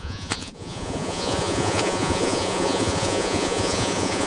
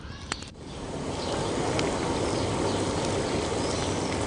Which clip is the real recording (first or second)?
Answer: second